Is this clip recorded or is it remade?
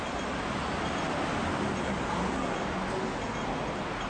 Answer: recorded